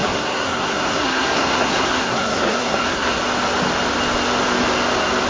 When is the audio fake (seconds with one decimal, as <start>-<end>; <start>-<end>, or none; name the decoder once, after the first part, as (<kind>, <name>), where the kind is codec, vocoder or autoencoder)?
0.0-3.2 (codec, SNAC)